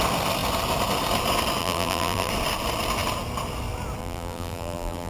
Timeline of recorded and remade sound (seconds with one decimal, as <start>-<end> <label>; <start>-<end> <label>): 0.0-1.6 recorded; 1.6-2.3 remade; 2.3-4.0 recorded; 4.0-5.1 remade